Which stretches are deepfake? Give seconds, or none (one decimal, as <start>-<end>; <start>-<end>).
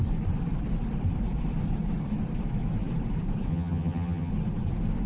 3.5-4.3